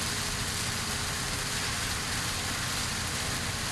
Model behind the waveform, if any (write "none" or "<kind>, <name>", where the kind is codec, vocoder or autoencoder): none